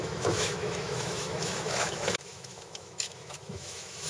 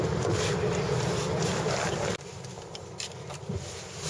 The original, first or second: second